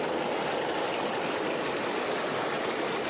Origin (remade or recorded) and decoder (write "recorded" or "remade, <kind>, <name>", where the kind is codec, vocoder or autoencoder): recorded